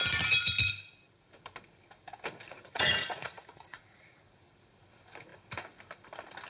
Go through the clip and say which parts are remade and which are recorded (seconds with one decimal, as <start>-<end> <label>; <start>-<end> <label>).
0.0-2.5 recorded; 2.5-4.2 remade; 4.2-6.5 recorded